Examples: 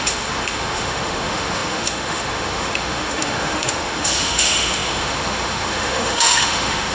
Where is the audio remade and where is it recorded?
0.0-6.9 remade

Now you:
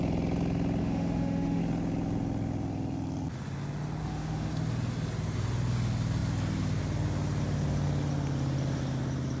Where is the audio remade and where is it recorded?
0.0-0.8 recorded; 0.8-1.6 remade; 1.6-4.0 recorded; 4.0-4.5 remade; 4.5-9.4 recorded

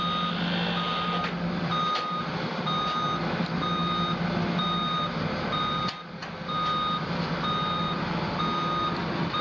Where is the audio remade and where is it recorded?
0.0-9.4 recorded

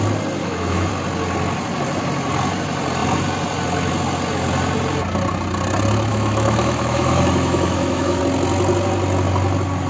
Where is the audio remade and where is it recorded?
0.0-0.4 recorded; 0.4-0.9 remade; 0.9-6.1 recorded; 6.1-8.2 remade; 8.2-9.9 recorded